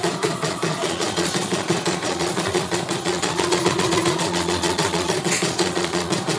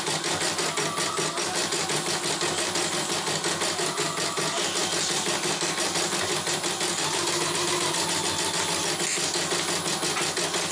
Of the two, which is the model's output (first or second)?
first